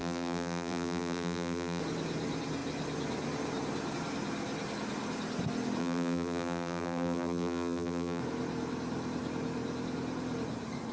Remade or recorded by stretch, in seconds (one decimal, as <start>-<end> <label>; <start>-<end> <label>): 0.0-1.8 remade; 1.8-5.8 recorded; 5.8-8.2 remade; 8.2-10.9 recorded